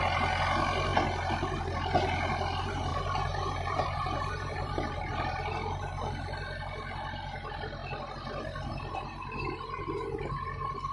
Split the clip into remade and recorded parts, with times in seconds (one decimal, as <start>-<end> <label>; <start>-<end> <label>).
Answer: 0.0-2.9 recorded; 2.9-5.0 remade; 5.0-10.9 recorded